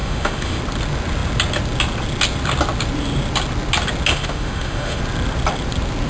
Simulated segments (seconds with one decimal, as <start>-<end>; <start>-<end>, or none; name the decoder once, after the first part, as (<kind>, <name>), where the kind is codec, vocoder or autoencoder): 0.0-0.6 (autoencoder, DAC-VAE); 4.1-5.0

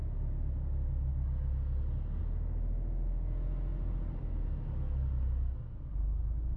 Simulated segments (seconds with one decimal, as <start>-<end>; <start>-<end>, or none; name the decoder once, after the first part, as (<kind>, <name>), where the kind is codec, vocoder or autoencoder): none

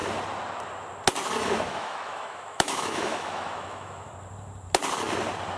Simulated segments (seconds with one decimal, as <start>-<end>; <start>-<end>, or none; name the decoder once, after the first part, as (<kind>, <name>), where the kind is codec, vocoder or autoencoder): 1.7-4.1 (autoencoder, DAC-VAE)

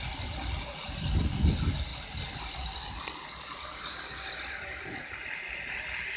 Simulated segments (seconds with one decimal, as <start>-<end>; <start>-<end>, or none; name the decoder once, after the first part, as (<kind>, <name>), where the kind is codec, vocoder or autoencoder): none

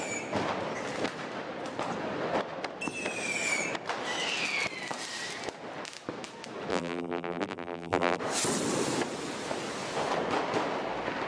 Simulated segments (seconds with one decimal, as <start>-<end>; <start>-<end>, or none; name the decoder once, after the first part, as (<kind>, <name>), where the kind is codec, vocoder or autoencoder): 6.7-8.2 (vocoder, BigVGAN v2)

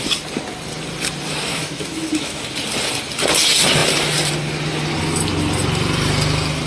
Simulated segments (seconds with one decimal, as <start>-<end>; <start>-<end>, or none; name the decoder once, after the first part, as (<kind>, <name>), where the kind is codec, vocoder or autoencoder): 1.5-2.4 (autoencoder, DAC-VAE)

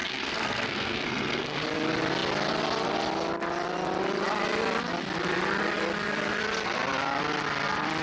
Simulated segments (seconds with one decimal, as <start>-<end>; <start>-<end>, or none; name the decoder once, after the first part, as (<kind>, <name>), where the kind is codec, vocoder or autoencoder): 0.0-1.6 (codec, SNAC)